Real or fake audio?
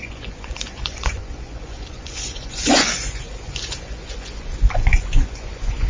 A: fake